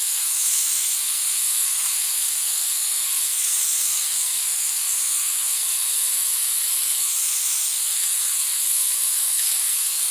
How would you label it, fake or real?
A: fake